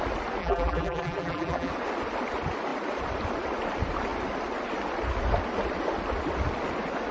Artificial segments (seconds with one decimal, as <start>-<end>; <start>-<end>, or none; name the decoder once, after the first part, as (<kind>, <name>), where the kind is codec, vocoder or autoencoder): 0.4-1.7 (vocoder, BigVGAN v2)